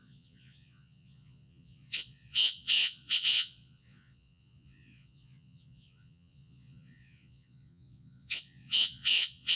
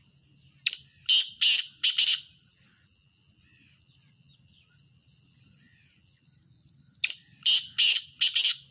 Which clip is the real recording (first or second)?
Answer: second